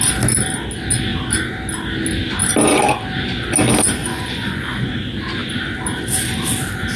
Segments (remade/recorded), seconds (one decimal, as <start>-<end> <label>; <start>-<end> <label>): 0.0-4.0 recorded; 4.0-4.9 remade; 4.9-7.0 recorded